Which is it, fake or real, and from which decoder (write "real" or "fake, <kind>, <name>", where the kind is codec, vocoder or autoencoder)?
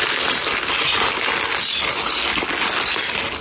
real